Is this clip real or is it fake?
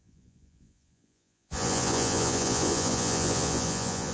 fake